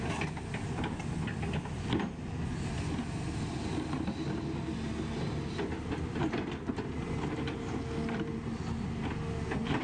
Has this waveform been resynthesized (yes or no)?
no